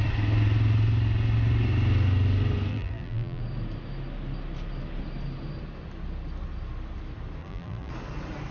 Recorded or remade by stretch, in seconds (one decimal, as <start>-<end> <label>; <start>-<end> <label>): 0.0-2.7 recorded; 2.7-3.4 remade; 3.4-7.4 recorded; 7.4-7.9 remade; 7.9-8.5 recorded